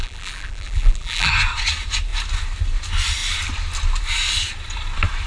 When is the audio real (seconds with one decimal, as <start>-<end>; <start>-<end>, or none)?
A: 1.3-5.3